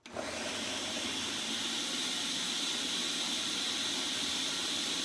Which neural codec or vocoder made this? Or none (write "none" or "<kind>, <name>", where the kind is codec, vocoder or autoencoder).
none